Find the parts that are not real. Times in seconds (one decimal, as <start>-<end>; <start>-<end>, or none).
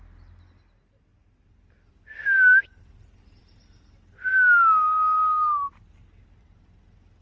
none